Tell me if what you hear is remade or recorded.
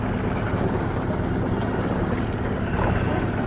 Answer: recorded